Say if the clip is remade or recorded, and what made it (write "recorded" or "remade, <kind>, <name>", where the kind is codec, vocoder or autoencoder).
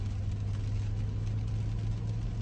recorded